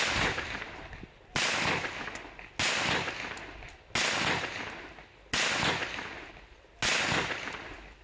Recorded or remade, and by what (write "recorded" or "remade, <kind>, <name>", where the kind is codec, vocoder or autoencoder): recorded